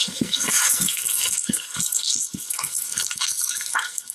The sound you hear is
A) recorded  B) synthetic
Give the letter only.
B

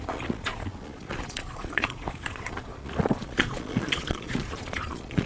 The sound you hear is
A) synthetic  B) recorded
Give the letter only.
A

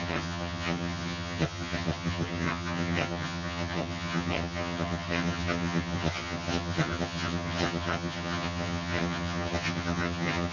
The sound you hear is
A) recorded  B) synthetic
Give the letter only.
B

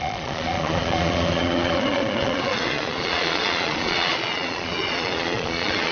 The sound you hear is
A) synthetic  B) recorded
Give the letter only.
A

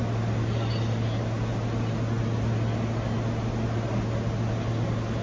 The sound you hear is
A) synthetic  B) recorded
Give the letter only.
B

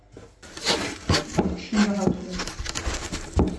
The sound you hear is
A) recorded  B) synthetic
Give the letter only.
A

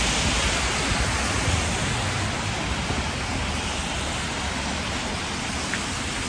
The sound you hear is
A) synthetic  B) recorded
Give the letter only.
B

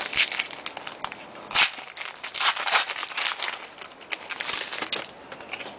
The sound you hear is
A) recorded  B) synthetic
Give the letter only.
A